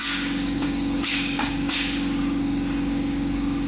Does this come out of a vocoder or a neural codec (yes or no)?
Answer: yes